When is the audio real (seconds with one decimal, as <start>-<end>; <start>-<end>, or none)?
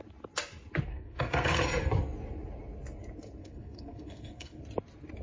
0.0-0.9; 1.6-3.4; 4.6-5.2